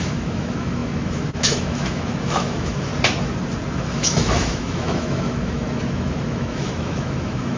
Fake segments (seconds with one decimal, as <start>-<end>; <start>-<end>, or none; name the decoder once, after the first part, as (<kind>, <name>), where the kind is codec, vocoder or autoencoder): 0.0-2.9 (autoencoder, DAC-VAE); 3.7-7.6